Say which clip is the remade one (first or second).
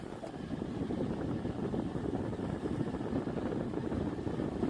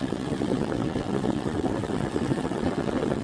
second